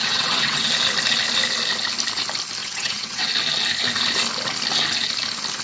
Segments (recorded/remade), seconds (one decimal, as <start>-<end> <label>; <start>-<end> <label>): 0.0-0.7 remade; 0.7-2.6 recorded; 2.6-3.3 remade; 3.3-5.6 recorded